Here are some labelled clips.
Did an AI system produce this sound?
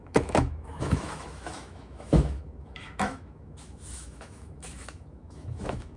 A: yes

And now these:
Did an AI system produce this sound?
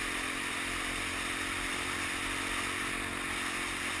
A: no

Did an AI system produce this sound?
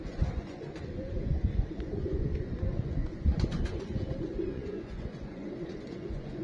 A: yes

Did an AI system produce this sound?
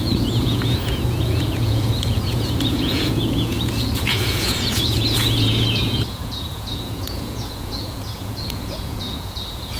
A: yes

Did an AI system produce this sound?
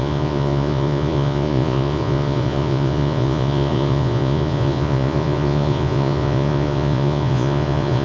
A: yes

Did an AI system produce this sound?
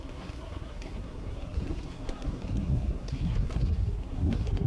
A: yes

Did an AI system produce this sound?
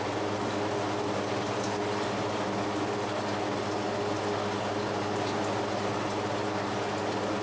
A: no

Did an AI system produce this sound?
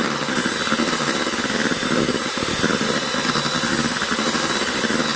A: no